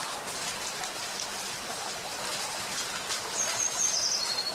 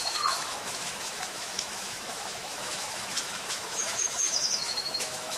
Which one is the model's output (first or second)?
second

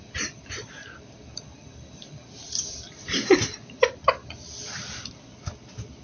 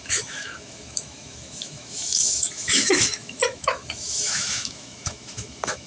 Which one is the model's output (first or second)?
second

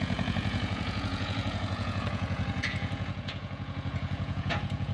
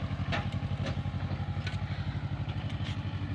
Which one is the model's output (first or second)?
first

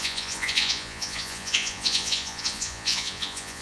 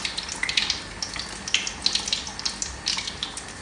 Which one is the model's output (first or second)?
first